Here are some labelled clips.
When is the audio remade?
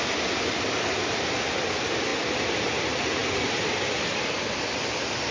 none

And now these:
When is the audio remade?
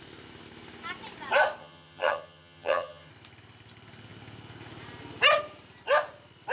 1.6-3.1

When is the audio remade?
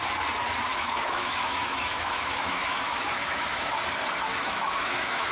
0.7-3.7; 4.3-5.3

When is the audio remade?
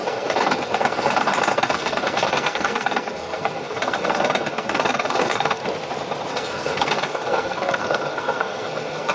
0.0-5.6; 6.3-9.1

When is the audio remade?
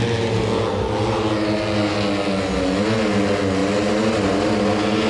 3.6-5.1